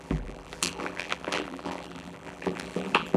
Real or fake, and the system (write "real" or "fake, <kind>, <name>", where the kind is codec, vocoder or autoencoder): fake, vocoder, BigVGAN v2